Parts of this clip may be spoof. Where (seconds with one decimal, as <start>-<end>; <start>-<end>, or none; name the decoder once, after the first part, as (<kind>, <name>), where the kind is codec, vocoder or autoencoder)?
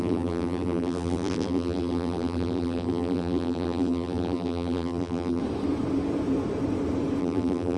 0.0-5.4 (vocoder, BigVGAN v2); 7.2-7.8